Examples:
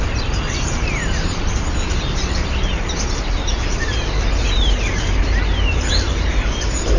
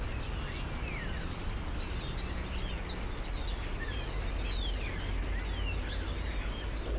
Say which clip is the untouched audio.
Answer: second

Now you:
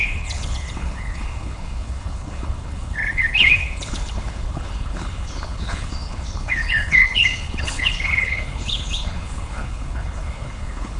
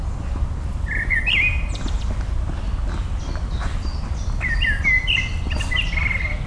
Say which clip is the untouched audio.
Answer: second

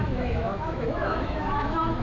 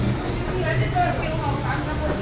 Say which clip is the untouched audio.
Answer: second